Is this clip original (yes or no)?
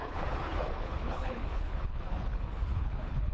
no